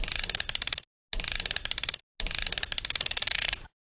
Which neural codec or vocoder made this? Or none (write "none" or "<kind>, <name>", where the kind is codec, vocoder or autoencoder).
none